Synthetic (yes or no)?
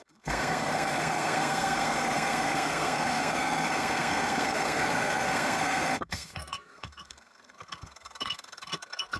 yes